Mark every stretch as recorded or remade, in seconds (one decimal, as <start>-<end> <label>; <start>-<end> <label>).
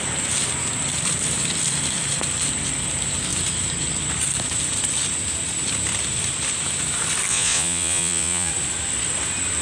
0.0-7.3 recorded; 7.3-8.5 remade; 8.5-9.6 recorded